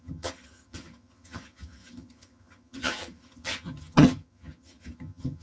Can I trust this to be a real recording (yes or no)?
no